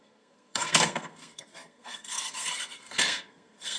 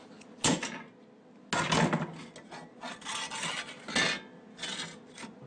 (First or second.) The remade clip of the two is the first